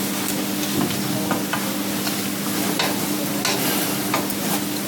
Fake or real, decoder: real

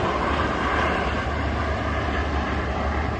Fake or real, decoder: real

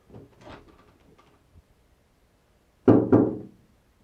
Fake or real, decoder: real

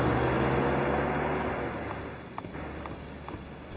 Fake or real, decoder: real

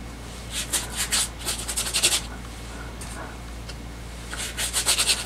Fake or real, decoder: real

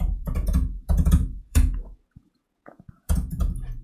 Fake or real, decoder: fake, vocoder, Vocos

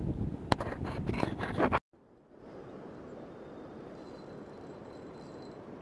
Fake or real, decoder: real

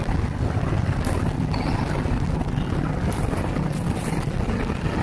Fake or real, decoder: real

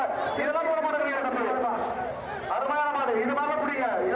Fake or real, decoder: real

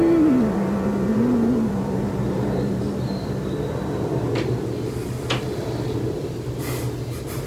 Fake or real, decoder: real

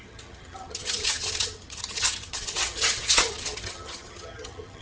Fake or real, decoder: fake, vocoder, HiFi-GAN